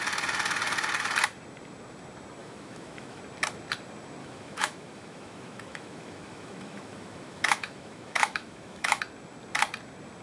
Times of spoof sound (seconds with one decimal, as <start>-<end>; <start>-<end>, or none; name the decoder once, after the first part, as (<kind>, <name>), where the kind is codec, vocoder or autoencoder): 2.4-3.2 (autoencoder, DAC-VAE); 4.2-9.0